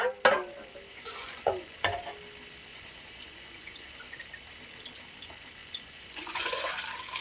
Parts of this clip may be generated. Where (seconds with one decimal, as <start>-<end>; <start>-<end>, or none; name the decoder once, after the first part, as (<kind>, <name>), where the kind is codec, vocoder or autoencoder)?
0.9-2.0 (vocoder, Vocos); 2.7-4.2; 5.6-6.7